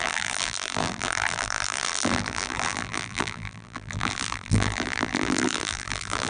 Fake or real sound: fake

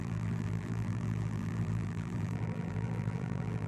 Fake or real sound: fake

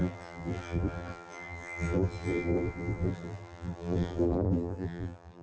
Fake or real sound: fake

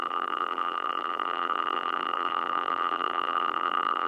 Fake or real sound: fake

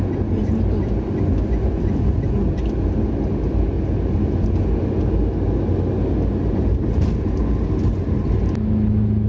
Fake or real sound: real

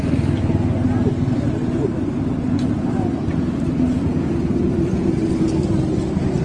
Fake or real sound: real